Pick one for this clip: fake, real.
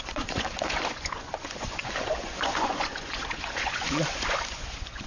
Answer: fake